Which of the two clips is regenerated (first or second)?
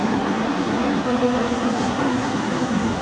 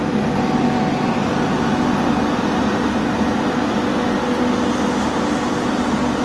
first